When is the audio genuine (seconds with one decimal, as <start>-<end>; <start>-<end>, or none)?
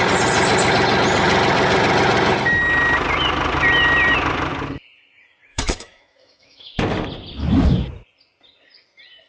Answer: 0.0-5.5; 6.8-9.3